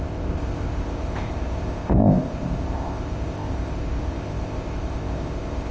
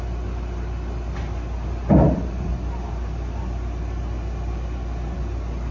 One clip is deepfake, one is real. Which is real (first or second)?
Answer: second